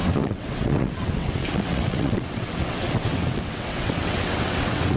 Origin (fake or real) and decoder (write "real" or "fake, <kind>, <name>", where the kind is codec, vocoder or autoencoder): fake, vocoder, WaveNeXt